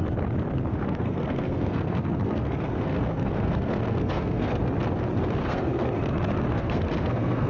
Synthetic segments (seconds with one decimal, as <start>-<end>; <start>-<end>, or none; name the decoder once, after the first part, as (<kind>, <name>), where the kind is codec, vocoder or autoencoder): 0.7-4.6 (codec, SNAC); 5.4-6.0; 6.5-7.5